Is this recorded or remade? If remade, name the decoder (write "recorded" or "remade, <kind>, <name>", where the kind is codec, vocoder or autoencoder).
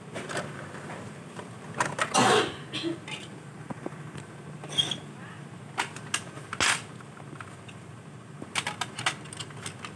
recorded